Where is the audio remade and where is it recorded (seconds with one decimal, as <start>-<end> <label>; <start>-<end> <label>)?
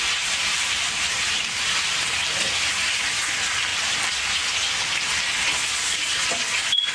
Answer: 0.0-0.5 recorded; 0.5-2.0 remade; 2.0-3.7 recorded; 3.7-4.4 remade; 4.4-6.9 recorded